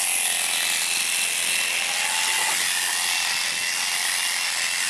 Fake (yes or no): no